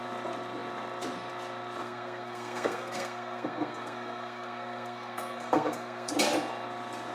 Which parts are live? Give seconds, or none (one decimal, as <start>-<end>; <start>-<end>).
0.0-1.8; 6.1-7.1